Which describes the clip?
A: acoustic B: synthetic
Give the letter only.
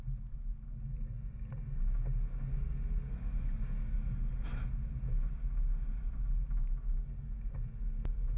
A